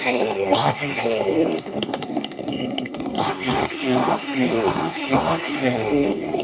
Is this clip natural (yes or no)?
no